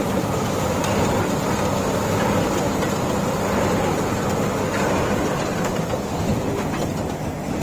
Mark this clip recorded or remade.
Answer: recorded